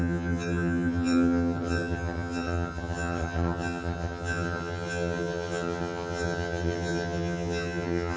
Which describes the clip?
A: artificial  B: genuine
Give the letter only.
A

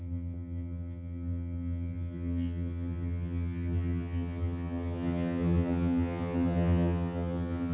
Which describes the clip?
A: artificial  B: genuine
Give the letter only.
A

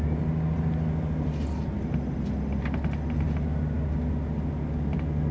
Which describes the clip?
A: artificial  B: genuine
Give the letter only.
B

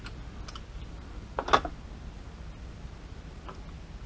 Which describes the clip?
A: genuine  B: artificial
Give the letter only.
A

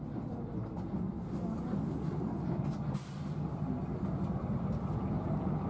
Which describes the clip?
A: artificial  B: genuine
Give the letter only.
B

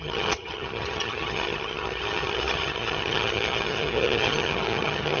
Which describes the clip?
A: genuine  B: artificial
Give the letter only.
B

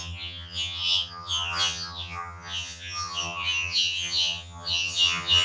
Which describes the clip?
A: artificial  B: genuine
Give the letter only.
A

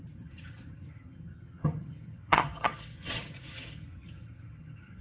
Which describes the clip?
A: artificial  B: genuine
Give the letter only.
A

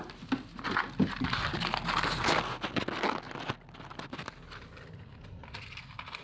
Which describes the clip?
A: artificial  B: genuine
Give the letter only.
B